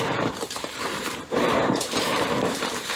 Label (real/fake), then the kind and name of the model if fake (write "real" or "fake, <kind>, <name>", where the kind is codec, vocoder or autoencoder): fake, vocoder, BigVGAN v2